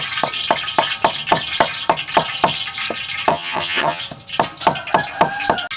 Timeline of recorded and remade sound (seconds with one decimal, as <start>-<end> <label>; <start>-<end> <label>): 0.0-3.3 recorded; 3.3-4.0 remade; 4.0-5.8 recorded